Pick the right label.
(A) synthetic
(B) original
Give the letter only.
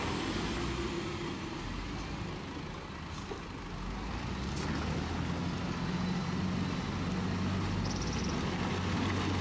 B